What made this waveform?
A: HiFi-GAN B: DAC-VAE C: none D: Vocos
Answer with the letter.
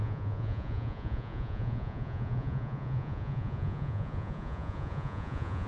D